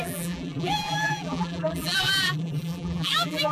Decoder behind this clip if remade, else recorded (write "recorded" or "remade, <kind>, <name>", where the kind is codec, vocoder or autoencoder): remade, vocoder, BigVGAN v2